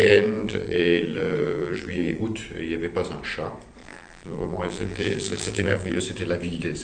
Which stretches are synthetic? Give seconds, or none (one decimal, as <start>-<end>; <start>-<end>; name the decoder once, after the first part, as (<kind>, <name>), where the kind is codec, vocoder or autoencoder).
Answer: 0.0-2.2 (vocoder, BigVGAN v2); 3.8-6.0